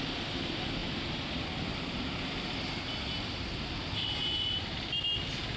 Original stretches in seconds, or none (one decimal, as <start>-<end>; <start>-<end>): 0.0-5.6